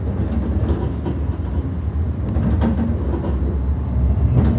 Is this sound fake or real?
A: real